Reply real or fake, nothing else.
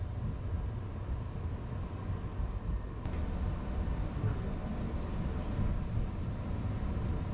real